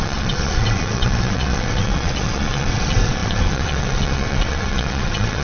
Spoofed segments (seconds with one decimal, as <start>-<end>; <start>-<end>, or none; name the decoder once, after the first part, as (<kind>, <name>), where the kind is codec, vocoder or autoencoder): 0.0-5.4 (vocoder, WaveNeXt)

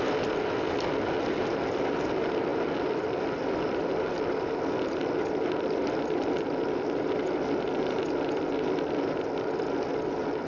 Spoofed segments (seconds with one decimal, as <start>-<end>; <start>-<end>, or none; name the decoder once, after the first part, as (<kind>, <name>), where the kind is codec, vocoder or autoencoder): none

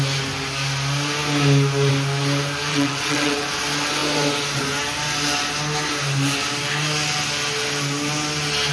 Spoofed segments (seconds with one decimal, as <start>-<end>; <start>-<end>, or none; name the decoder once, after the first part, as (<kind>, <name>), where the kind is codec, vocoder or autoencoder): 2.7-3.6 (vocoder, WaveNeXt)

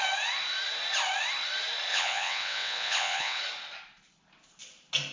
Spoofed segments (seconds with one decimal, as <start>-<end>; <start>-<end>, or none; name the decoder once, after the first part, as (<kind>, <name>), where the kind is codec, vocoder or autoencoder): 1.9-3.4 (vocoder, WaveNeXt)

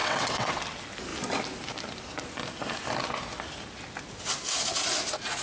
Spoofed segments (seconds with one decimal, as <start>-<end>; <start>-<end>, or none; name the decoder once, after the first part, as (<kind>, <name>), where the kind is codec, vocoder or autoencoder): 0.0-0.6 (vocoder, WaveNeXt)

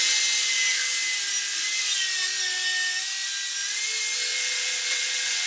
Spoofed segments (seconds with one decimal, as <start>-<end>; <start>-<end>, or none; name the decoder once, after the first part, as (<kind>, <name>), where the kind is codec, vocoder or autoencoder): 4.3-5.5 (vocoder, WaveNeXt)

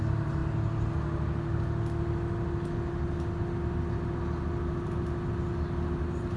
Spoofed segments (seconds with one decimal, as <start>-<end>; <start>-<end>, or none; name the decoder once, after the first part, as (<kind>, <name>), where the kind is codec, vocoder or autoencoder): none